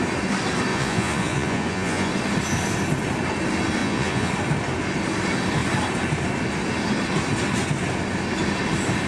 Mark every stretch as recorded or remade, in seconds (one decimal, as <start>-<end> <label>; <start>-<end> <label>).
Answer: 0.0-0.7 recorded; 0.7-2.1 remade; 2.1-3.8 recorded; 3.8-4.3 remade; 4.3-9.1 recorded